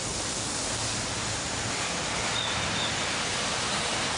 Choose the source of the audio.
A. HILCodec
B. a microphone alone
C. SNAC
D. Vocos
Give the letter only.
B